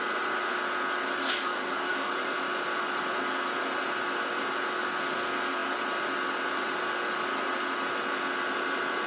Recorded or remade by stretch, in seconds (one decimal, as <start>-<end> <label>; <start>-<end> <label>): 0.0-1.3 recorded; 1.3-2.1 remade; 2.1-9.1 recorded